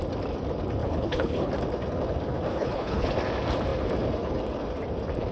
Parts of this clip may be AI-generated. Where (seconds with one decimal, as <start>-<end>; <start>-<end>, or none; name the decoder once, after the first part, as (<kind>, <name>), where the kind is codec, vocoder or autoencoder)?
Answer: 0.8-1.5 (codec, HILCodec); 2.5-3.1